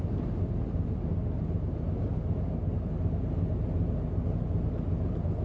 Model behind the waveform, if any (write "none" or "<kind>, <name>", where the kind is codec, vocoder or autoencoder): none